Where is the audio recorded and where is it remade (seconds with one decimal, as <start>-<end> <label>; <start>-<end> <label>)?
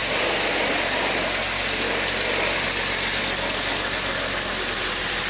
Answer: 0.0-5.3 recorded